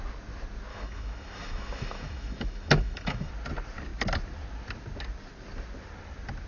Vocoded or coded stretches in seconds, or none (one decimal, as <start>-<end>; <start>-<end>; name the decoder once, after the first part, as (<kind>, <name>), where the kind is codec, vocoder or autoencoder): 0.7-3.3 (autoencoder, DAC-VAE)